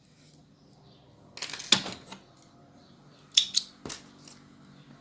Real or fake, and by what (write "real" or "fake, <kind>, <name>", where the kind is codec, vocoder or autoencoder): real